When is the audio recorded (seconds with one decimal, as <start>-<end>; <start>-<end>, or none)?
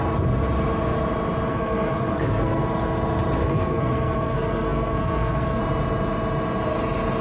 0.0-1.5; 2.6-3.4; 5.6-7.2